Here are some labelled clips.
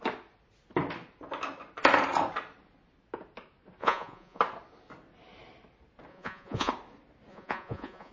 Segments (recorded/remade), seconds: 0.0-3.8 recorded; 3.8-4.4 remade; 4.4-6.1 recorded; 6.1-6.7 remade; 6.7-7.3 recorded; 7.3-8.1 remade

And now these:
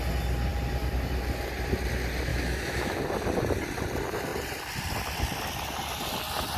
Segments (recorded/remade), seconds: 0.0-2.3 recorded; 2.3-3.0 remade; 3.0-6.6 recorded